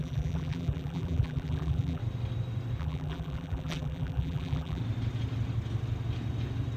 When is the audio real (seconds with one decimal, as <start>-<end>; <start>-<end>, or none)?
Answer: 2.0-2.8; 4.8-6.8